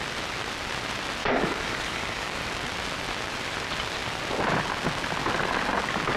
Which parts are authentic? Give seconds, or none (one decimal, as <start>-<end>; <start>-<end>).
0.0-1.2; 2.4-6.2